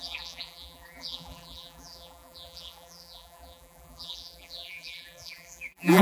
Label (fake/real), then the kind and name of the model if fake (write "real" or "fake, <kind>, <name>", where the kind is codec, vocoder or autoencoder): fake, vocoder, BigVGAN v2